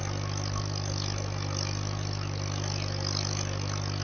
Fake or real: real